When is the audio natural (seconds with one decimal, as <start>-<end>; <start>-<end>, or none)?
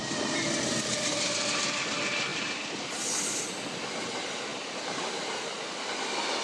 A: 0.7-2.3; 3.0-4.5; 5.8-6.4